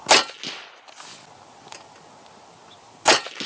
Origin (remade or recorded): recorded